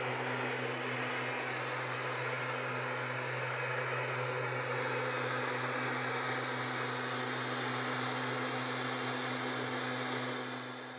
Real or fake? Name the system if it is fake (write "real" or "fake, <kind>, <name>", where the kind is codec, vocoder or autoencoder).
real